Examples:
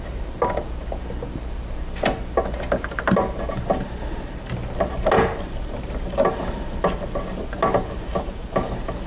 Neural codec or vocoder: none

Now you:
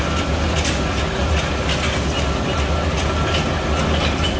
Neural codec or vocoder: none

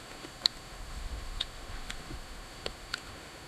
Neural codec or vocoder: autoencoder, DAC-VAE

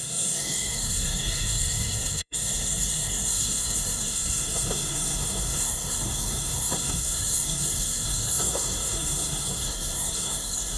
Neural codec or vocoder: codec, SNAC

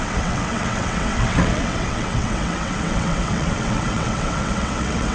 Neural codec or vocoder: vocoder, WaveNeXt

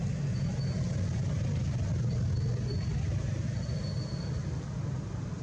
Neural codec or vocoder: none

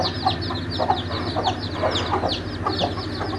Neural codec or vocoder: none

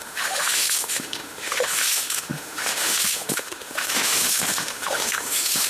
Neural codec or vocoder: autoencoder, DAC-VAE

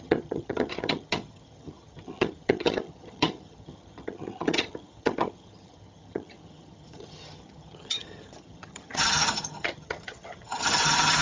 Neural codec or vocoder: vocoder, HiFi-GAN